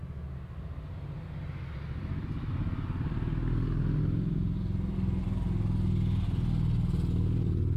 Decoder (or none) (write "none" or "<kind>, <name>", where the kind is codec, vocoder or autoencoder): none